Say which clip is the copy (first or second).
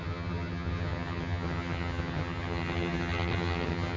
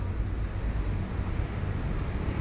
first